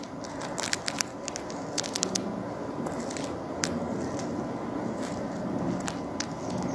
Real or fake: real